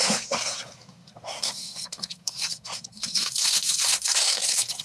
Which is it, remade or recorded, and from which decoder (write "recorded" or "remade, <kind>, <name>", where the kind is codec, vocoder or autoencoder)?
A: remade, codec, SNAC